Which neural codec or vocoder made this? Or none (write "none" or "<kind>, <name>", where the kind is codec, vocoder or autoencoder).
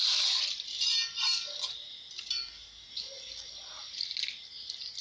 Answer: none